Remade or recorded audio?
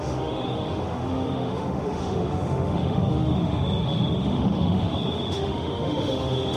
remade